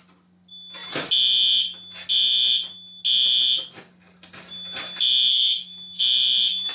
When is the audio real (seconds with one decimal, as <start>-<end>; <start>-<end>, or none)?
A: 0.0-5.3; 6.0-6.7

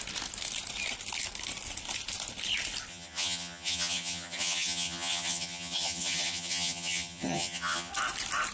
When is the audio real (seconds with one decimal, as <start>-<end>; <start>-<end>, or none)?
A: 0.0-2.9; 7.9-8.5

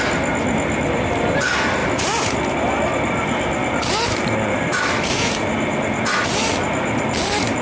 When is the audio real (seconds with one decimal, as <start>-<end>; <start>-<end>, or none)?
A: 0.0-7.6

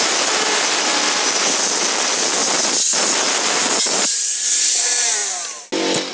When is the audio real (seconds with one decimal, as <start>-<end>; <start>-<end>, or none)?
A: 0.0-6.1

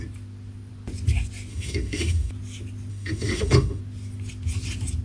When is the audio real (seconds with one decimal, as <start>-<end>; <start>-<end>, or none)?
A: 0.0-1.5; 2.3-2.9; 3.8-5.0